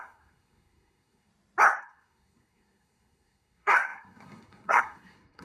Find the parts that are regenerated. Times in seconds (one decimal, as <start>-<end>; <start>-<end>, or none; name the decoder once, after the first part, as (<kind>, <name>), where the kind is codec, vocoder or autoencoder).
0.0-1.3 (codec, SNAC); 1.8-5.4